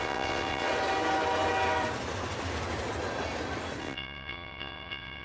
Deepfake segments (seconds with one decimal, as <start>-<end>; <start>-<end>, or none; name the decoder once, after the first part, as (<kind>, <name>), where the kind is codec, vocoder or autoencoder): 0.0-0.7 (vocoder, WaveNeXt); 3.8-5.2